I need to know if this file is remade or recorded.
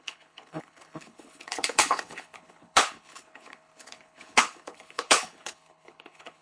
remade